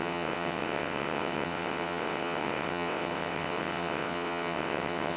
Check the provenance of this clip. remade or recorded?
remade